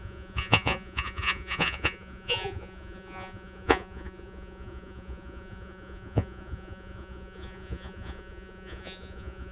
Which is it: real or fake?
fake